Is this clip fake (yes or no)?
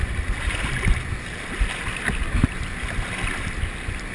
no